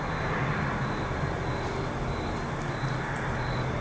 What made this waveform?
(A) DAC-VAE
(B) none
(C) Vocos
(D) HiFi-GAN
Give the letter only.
B